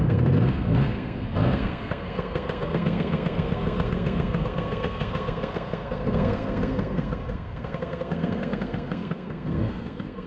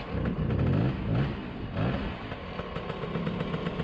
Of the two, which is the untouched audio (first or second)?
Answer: second